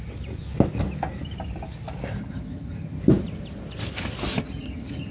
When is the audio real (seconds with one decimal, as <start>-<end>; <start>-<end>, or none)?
0.0-2.2; 3.0-4.3

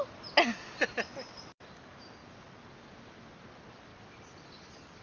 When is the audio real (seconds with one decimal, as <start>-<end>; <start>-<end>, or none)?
0.0-5.0